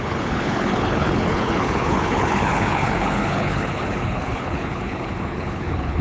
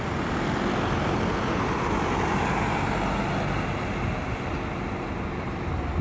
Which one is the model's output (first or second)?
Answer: first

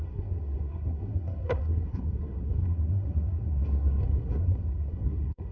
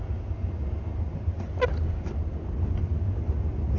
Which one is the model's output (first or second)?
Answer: first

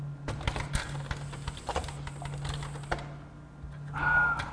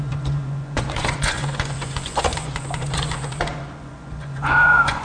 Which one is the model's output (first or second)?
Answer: second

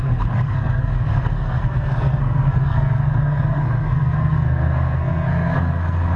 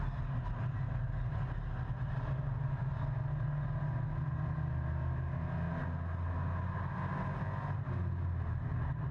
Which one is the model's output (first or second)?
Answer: first